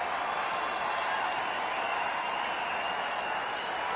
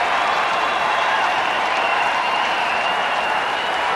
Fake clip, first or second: second